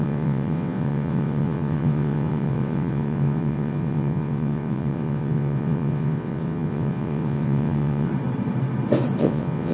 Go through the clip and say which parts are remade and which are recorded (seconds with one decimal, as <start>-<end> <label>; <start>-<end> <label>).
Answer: 0.0-8.1 remade; 8.1-9.2 recorded; 9.2-9.7 remade